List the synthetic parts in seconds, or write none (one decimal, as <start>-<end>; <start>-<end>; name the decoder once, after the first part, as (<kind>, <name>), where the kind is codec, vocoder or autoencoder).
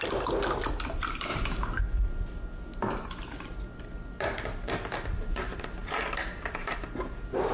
1.3-1.8 (vocoder, BigVGAN v2); 2.7-3.9; 5.8-6.8